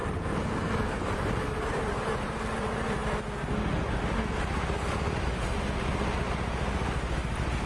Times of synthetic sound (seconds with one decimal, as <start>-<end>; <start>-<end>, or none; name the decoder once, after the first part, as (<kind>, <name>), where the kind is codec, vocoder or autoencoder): 0.0-3.0 (vocoder, BigVGAN v2)